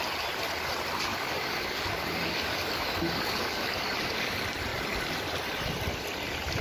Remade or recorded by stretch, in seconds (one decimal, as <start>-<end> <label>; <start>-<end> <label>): 0.0-1.1 recorded; 1.1-4.3 remade; 4.3-6.6 recorded